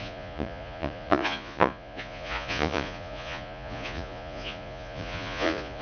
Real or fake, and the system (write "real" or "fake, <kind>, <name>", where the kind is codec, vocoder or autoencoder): fake, vocoder, Vocos